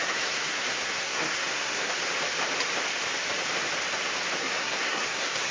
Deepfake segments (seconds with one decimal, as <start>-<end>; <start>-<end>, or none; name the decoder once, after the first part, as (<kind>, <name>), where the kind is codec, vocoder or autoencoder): 0.0-1.9 (codec, SNAC); 4.4-5.5